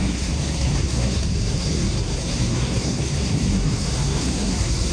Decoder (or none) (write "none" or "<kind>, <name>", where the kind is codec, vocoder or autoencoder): codec, SNAC